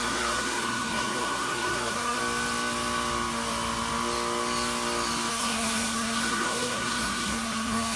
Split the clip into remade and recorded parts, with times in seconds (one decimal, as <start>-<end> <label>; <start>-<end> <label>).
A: 0.0-2.2 remade; 2.2-5.3 recorded; 5.3-8.0 remade